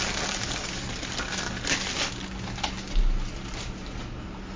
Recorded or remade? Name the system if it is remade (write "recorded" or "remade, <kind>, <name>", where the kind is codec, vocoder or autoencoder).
recorded